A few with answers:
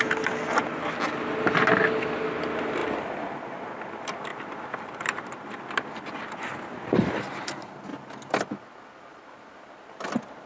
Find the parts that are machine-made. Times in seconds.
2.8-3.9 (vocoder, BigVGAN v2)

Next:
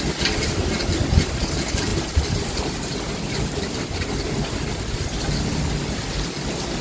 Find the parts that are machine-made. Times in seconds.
none

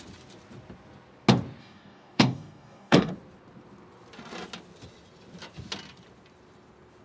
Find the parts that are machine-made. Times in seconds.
1.6-3.1 (codec, DAC)